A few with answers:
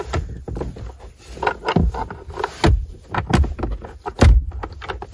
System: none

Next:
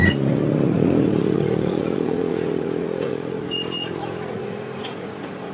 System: vocoder, Vocos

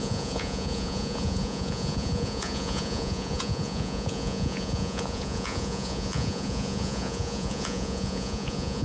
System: vocoder, Vocos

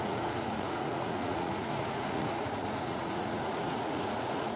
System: vocoder, Vocos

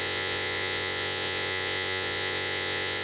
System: vocoder, Vocos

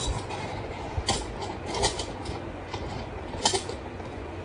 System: vocoder, Vocos